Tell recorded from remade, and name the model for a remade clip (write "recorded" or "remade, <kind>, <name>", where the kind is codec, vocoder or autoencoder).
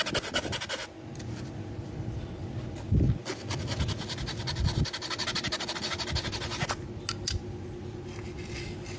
recorded